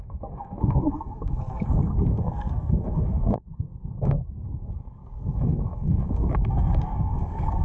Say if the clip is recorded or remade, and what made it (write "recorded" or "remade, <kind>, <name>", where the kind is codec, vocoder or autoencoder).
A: remade, codec, SNAC